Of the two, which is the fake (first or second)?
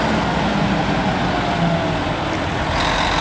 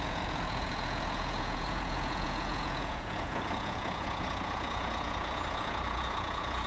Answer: second